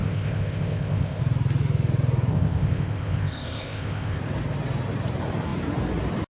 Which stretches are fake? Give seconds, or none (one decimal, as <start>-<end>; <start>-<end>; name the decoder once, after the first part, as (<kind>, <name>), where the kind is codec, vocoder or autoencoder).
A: 0.0-1.2 (codec, ZipCodec); 2.3-4.2